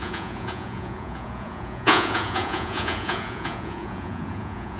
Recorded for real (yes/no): no